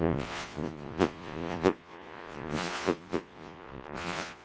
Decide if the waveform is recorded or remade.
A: remade